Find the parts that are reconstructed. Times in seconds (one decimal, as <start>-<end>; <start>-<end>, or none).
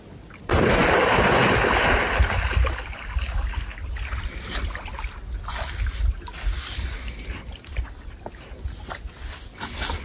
none